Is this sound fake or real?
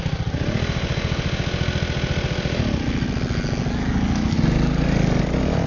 real